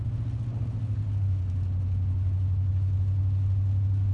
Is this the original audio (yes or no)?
yes